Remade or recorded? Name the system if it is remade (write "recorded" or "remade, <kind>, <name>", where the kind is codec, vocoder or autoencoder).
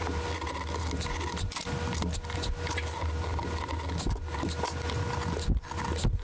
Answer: recorded